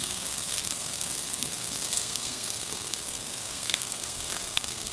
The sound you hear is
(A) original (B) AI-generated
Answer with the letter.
B